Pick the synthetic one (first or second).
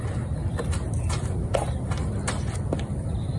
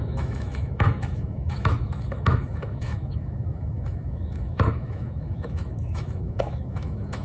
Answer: second